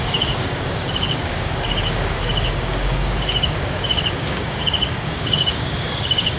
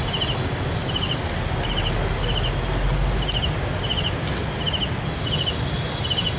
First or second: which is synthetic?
first